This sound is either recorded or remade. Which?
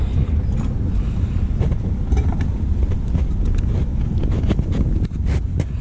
recorded